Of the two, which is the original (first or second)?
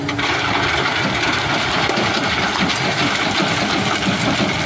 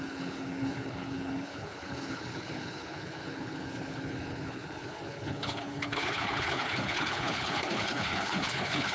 first